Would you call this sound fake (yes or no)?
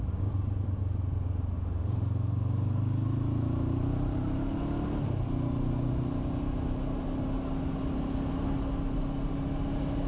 no